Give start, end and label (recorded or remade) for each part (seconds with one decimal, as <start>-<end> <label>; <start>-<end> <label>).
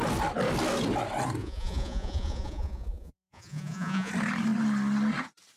0.0-1.4 recorded; 1.4-4.1 remade; 4.1-5.6 recorded